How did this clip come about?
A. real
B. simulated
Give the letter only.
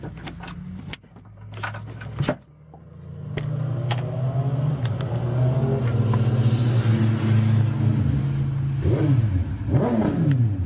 A